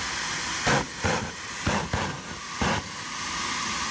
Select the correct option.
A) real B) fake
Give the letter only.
A